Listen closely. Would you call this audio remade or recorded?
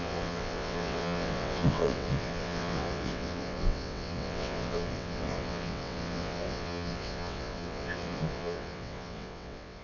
remade